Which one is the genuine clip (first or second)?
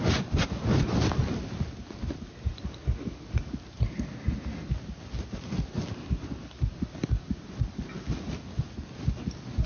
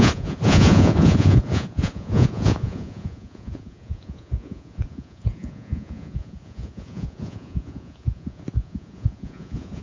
first